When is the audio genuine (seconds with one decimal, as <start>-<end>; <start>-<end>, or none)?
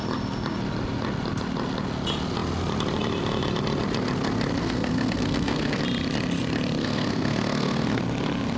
0.0-4.6; 5.8-6.8; 8.0-8.6